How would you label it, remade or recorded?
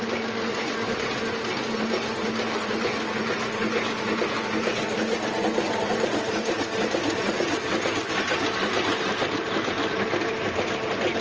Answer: recorded